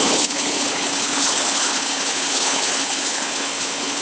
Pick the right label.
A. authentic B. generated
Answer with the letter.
B